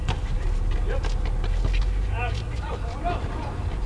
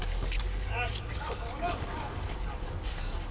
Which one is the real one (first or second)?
first